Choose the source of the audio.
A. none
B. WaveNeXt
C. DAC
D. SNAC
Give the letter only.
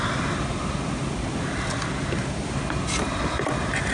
A